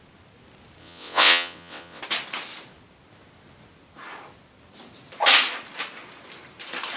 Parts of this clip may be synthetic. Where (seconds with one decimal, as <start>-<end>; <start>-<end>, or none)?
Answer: 0.8-2.0